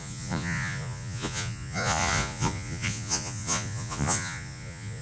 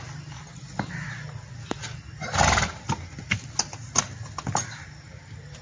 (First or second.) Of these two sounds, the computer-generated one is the first